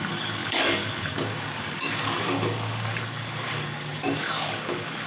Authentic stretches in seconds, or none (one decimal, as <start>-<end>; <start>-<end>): none